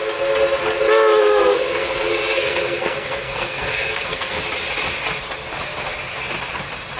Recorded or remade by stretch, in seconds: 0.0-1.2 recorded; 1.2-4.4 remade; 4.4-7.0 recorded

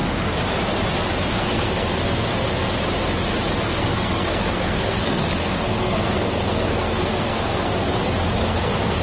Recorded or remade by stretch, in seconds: 0.0-1.3 recorded; 1.3-2.3 remade; 2.3-3.6 recorded; 3.6-7.7 remade; 7.7-8.4 recorded; 8.4-9.0 remade

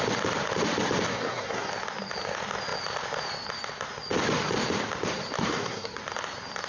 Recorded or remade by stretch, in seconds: 0.0-1.1 recorded; 1.1-1.7 remade; 1.7-5.4 recorded; 5.4-6.0 remade; 6.0-6.7 recorded

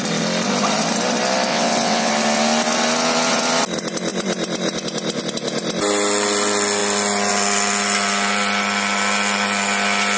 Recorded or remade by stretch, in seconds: 0.0-1.5 recorded; 1.5-2.1 remade; 2.1-10.2 recorded

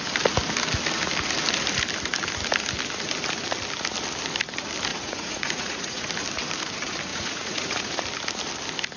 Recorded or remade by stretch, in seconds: 0.0-4.9 recorded; 4.9-6.1 remade; 6.1-7.1 recorded; 7.1-8.0 remade; 8.0-9.0 recorded

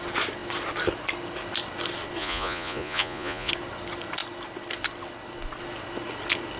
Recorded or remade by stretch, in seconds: 0.0-2.2 recorded; 2.2-3.5 remade; 3.5-6.6 recorded

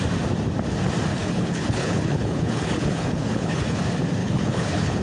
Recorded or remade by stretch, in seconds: 0.0-1.1 recorded; 1.1-3.8 remade; 3.8-4.2 recorded; 4.2-5.0 remade

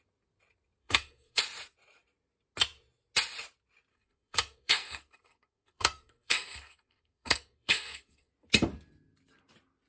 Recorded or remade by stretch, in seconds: 0.0-0.8 recorded; 0.8-1.4 remade; 1.4-3.9 recorded; 3.9-8.3 remade; 8.3-9.9 recorded